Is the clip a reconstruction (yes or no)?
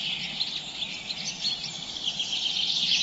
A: no